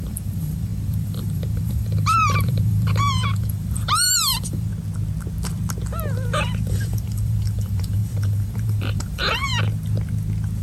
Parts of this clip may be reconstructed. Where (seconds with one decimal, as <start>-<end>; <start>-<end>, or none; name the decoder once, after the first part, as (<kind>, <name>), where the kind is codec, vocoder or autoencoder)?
0.0-4.7 (vocoder, BigVGAN v2); 6.7-9.5